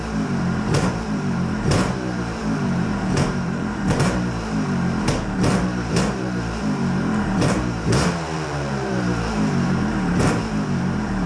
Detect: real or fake fake